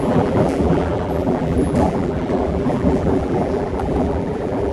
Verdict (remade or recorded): remade